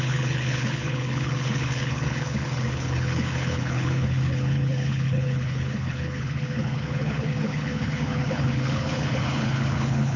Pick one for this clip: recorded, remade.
remade